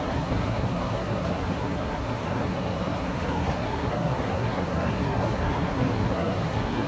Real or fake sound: fake